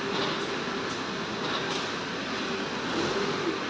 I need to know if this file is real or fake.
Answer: real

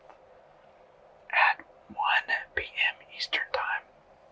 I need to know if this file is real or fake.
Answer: real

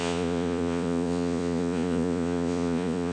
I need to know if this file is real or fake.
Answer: fake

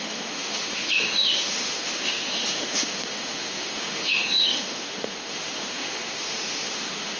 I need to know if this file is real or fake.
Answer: fake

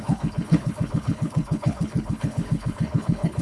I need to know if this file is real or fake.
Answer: fake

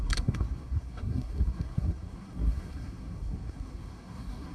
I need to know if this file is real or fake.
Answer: fake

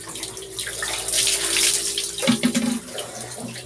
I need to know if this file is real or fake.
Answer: real